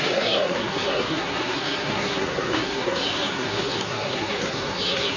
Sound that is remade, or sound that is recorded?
remade